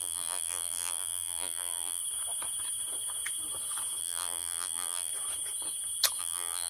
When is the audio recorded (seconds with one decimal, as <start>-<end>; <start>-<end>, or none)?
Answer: 2.0-4.0; 5.1-6.2